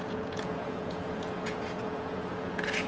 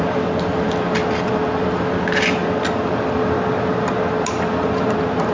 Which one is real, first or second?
second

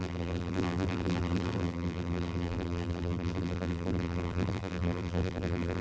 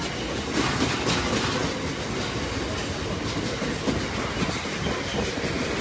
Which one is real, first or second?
second